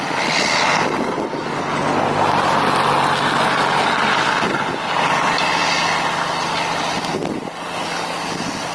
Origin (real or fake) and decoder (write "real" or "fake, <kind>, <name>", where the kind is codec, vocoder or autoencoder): real